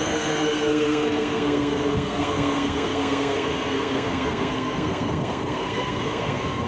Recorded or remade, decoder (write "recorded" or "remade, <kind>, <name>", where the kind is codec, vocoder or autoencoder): remade, codec, SNAC